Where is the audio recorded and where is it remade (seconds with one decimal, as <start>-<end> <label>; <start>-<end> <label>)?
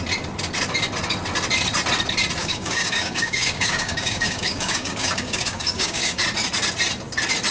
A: 0.0-2.4 recorded; 2.4-6.2 remade; 6.2-7.5 recorded